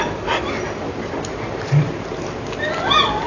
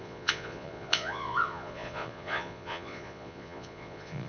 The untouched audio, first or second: first